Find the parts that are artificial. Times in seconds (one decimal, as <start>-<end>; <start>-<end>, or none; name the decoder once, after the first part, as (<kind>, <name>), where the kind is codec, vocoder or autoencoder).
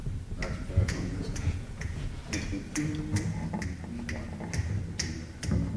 0.7-2.2 (vocoder, Vocos)